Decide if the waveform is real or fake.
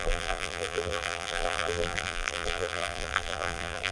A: fake